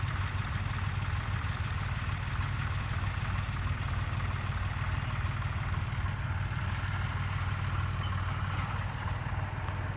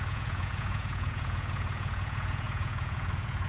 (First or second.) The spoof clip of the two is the second